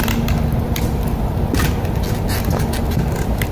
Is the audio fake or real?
real